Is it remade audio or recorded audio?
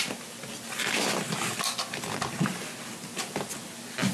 recorded